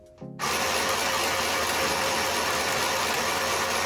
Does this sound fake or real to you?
real